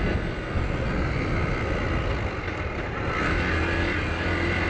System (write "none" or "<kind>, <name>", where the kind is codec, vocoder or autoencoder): none